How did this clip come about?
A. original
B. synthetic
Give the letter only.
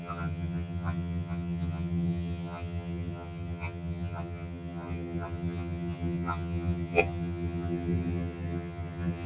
B